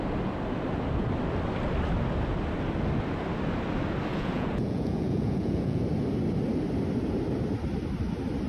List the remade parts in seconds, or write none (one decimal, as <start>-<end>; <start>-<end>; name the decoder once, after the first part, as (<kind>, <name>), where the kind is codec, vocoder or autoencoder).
4.1-5.8 (vocoder, Vocos)